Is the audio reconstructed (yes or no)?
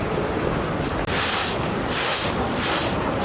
no